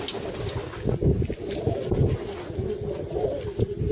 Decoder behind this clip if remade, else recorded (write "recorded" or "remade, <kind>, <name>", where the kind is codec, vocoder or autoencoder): recorded